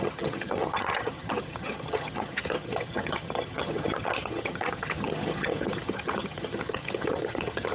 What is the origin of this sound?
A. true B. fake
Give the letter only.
B